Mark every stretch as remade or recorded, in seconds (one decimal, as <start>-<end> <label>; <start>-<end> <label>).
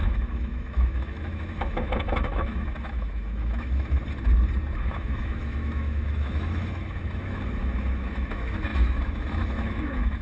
0.0-4.0 remade; 4.0-4.8 recorded; 4.8-10.2 remade